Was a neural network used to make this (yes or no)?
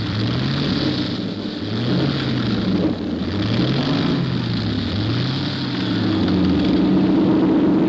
no